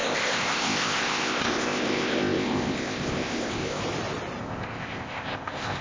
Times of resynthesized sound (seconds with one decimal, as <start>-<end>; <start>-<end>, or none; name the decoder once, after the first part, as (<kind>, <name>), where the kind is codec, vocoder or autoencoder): 0.0-3.8 (codec, ZipCodec); 4.4-5.8